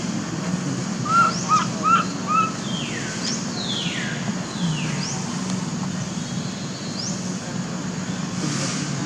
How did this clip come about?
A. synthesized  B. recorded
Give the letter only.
B